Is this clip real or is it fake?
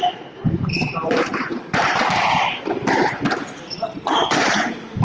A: fake